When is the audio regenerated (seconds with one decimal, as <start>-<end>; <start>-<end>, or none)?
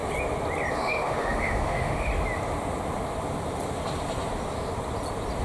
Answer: 0.7-2.1